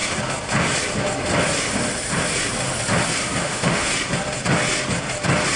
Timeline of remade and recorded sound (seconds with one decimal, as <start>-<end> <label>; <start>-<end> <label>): 0.0-3.4 recorded; 3.4-3.9 remade; 3.9-5.6 recorded